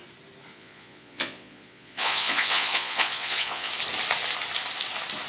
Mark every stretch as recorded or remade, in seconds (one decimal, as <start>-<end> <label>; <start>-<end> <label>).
0.0-0.5 recorded; 0.5-3.7 remade; 3.7-5.3 recorded

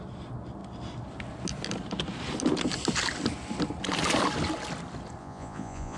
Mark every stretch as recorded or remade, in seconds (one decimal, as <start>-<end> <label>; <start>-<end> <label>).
0.0-5.2 recorded; 5.2-6.0 remade